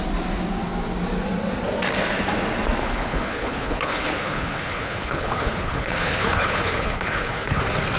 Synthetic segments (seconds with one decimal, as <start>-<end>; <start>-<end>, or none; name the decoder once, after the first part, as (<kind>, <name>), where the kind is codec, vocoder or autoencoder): 2.8-7.6 (codec, HILCodec)